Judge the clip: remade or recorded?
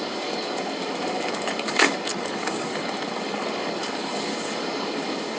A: remade